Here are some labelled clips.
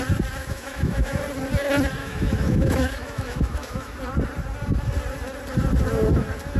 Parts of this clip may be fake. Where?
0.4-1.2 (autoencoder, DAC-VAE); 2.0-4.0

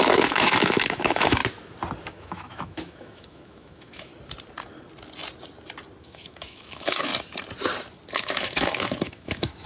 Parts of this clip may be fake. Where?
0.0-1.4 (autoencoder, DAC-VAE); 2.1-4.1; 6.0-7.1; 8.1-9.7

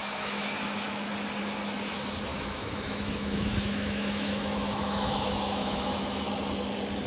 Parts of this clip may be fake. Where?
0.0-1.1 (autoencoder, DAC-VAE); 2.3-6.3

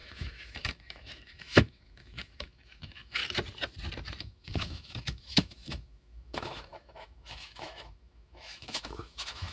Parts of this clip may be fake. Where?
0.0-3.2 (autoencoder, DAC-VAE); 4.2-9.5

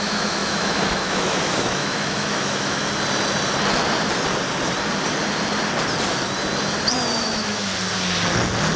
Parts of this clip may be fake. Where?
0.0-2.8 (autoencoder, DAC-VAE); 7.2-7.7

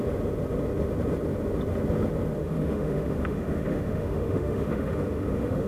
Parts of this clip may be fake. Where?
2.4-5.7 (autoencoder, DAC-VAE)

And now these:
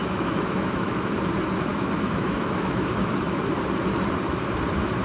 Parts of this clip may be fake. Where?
0.0-1.1 (autoencoder, DAC-VAE); 1.7-3.4